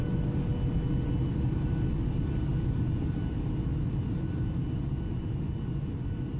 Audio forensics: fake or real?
real